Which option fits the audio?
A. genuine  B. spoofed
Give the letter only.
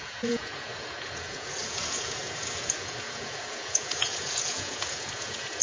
B